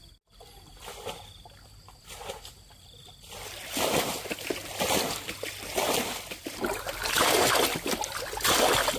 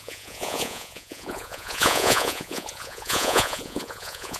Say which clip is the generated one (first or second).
second